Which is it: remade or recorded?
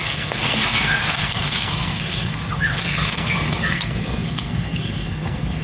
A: remade